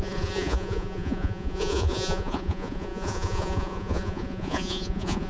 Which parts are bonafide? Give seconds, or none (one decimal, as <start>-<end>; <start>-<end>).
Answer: none